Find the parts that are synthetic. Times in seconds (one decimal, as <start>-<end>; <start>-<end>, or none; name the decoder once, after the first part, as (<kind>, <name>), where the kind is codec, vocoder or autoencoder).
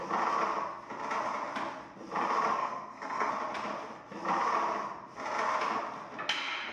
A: 2.6-3.3 (codec, SNAC)